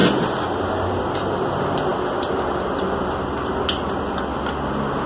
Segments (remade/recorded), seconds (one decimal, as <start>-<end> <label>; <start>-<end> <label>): 0.0-5.1 recorded